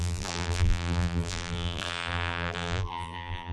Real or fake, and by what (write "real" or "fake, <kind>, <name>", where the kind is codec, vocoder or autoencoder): fake, vocoder, BigVGAN v2